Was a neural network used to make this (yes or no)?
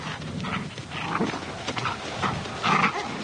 no